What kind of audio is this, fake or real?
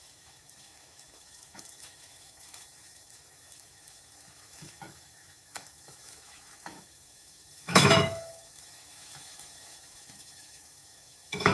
fake